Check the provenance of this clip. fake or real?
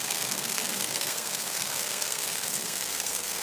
fake